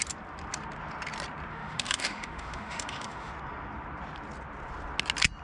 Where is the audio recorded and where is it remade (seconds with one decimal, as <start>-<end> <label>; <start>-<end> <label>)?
0.0-1.5 recorded; 1.5-3.3 remade; 3.3-5.4 recorded